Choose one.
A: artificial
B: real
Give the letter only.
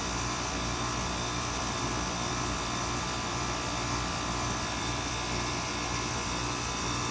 A